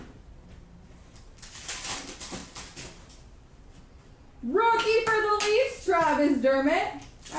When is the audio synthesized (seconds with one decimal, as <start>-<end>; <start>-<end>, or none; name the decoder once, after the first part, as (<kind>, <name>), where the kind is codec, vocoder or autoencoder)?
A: none

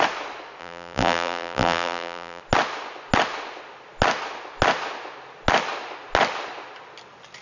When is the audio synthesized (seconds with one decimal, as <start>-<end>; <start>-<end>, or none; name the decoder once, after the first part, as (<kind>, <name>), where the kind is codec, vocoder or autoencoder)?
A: 0.6-2.4 (vocoder, BigVGAN v2)

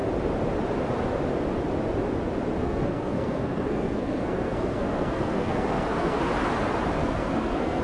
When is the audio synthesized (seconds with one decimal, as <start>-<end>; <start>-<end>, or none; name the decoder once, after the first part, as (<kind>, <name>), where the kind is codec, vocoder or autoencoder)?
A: 2.6-6.3 (codec, SNAC); 7.0-7.8

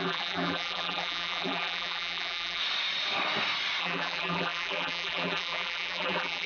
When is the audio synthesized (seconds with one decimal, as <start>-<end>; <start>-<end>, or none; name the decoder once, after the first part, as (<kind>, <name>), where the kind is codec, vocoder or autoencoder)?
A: 0.0-2.6 (vocoder, BigVGAN v2); 3.8-6.5

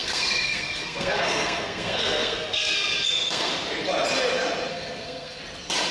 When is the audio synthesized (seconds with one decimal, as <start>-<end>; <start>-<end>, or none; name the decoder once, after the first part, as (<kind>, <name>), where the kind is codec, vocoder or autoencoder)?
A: 0.0-3.5 (codec, SNAC); 4.7-5.4